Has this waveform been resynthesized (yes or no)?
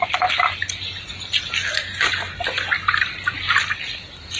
no